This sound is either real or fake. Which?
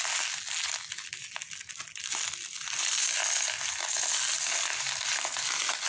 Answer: real